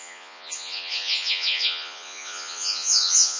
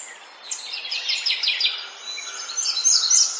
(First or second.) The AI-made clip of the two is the first